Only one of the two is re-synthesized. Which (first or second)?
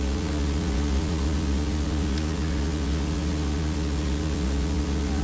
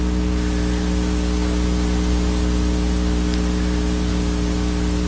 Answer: first